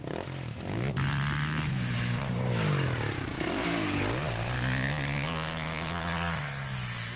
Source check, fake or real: real